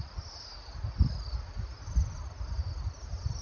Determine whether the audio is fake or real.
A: real